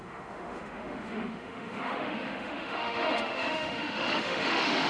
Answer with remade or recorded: remade